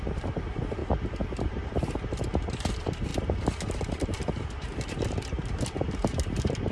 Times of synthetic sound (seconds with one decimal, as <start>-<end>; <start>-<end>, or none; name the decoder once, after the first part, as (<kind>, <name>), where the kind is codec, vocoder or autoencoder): 0.0-0.8 (vocoder, BigVGAN v2); 1.4-6.7